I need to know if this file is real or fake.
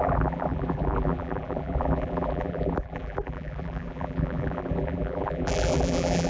fake